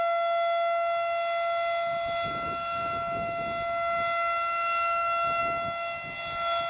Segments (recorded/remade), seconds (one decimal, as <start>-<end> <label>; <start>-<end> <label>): 0.0-6.7 recorded